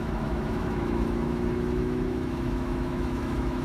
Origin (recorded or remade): remade